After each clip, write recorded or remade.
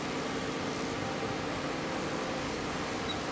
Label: recorded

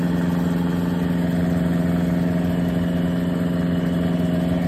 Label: recorded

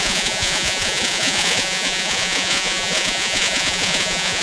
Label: remade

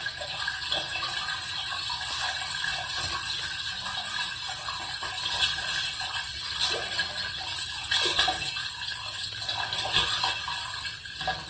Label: recorded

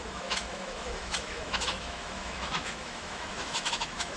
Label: remade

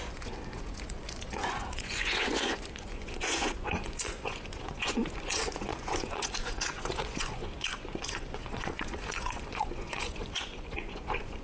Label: remade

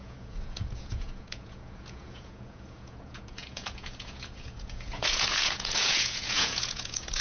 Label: remade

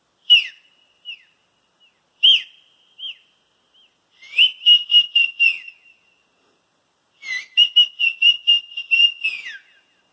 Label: recorded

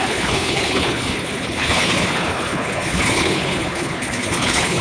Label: remade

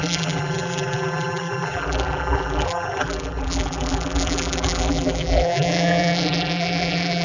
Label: remade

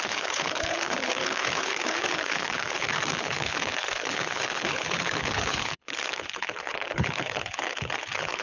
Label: remade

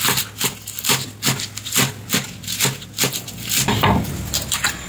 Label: recorded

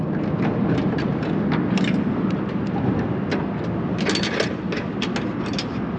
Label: recorded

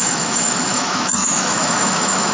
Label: remade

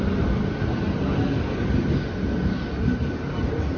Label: recorded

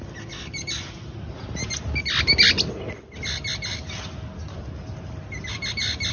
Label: recorded